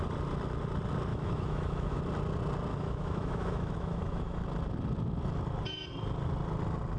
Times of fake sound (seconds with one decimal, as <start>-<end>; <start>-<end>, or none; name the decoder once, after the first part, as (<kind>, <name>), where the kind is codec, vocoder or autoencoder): 1.1-2.0 (autoencoder, DAC-VAE); 2.7-4.4